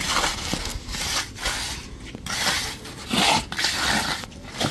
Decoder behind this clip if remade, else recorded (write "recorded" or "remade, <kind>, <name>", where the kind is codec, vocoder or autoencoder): recorded